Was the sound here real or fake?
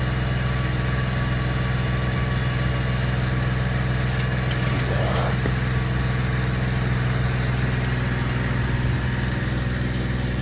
real